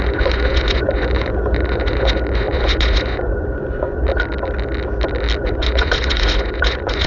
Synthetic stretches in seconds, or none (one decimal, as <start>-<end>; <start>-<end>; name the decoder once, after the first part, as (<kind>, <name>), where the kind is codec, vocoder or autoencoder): 0.0-4.0 (vocoder, Vocos); 5.4-7.1